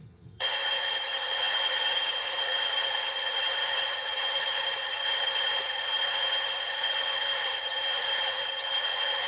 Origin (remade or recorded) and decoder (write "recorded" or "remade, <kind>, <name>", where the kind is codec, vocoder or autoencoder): remade, vocoder, HiFi-GAN